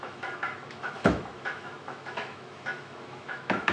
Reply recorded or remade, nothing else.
remade